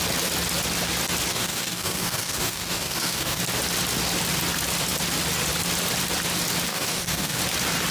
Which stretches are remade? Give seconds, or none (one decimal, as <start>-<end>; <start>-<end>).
1.3-3.4; 6.7-7.4